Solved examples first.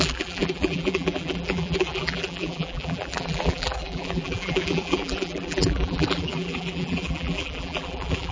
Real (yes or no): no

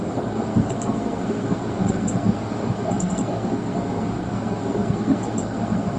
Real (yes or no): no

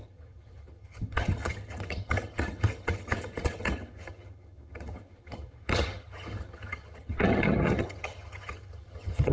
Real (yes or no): no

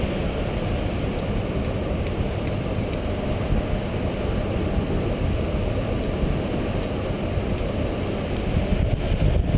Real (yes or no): yes